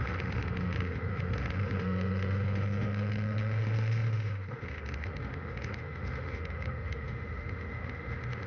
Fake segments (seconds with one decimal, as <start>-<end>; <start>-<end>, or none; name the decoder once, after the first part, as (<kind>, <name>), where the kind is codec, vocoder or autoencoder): 0.0-8.5 (autoencoder, DAC-VAE)

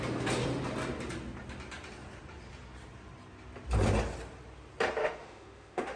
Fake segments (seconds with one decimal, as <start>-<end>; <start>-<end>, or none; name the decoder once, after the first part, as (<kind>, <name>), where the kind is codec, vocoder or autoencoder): 5.0-6.0 (autoencoder, DAC-VAE)

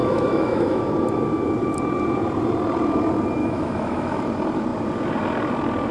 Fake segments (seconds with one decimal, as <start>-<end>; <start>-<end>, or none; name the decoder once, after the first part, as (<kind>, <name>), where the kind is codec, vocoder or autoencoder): 0.0-0.8 (autoencoder, DAC-VAE); 3.4-4.2